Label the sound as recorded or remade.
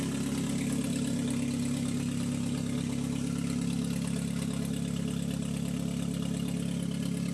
recorded